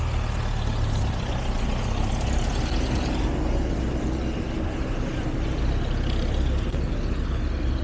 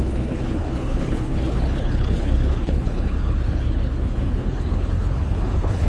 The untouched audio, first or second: first